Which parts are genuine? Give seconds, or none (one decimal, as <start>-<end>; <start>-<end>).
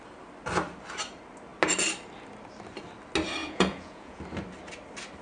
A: 0.0-3.4; 4.2-5.2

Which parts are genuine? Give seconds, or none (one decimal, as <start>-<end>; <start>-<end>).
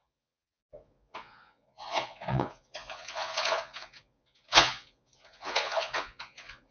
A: none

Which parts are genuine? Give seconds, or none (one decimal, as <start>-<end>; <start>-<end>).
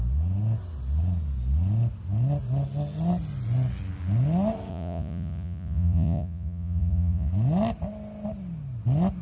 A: 0.0-4.7; 7.3-9.2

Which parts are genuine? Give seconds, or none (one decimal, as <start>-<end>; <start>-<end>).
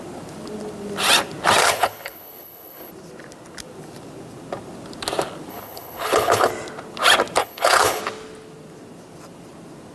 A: 0.0-1.6; 2.9-5.5; 6.5-7.4; 8.0-9.9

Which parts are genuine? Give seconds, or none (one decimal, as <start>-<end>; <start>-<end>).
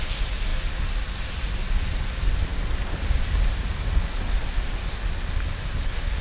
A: 0.0-6.2